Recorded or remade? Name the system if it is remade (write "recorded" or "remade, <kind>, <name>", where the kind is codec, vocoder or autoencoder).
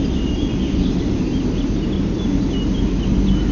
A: recorded